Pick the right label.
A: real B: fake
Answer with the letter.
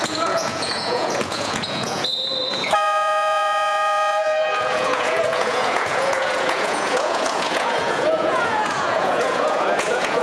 B